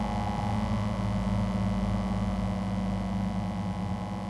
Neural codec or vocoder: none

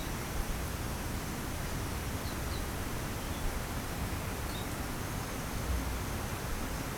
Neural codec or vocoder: none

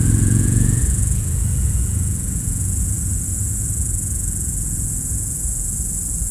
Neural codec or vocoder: vocoder, Vocos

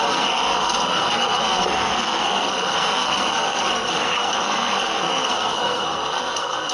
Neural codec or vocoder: codec, SNAC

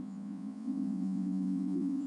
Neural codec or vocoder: vocoder, Vocos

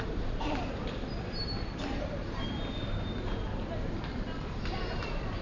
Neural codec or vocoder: vocoder, BigVGAN v2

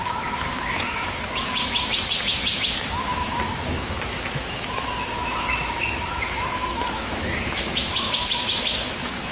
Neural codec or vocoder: autoencoder, DAC-VAE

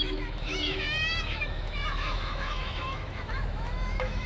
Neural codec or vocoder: autoencoder, DAC-VAE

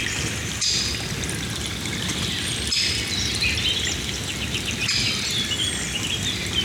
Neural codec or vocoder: none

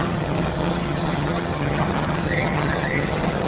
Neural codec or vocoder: vocoder, HiFi-GAN